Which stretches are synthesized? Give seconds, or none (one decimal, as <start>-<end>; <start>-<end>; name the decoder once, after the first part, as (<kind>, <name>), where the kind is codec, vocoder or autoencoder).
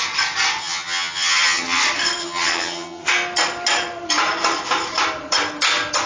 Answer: 0.6-1.8 (vocoder, HiFi-GAN); 2.2-3.1